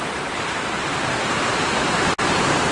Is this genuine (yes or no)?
no